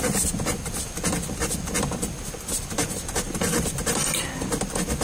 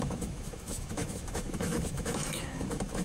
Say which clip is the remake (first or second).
second